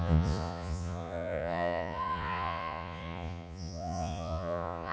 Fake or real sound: fake